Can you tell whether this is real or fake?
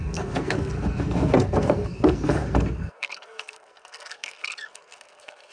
fake